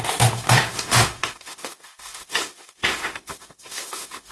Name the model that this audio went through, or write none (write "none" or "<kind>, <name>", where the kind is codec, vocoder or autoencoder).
autoencoder, DAC-VAE